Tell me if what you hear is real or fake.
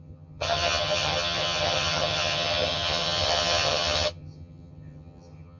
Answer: fake